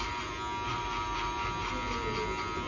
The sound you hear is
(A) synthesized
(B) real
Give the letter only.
B